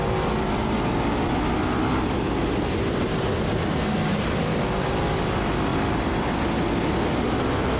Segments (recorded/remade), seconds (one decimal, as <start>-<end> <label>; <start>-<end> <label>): 0.0-7.8 recorded